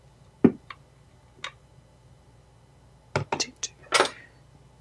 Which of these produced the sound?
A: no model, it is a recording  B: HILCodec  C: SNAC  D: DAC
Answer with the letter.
A